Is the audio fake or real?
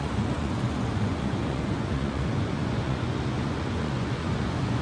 fake